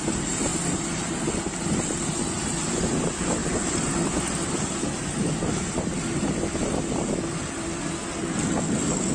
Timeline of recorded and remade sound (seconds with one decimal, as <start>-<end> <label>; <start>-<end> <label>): 0.0-0.5 recorded; 0.5-1.2 remade; 1.2-9.1 recorded